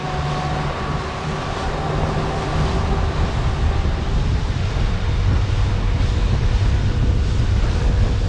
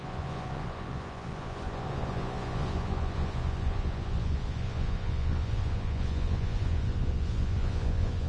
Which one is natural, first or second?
first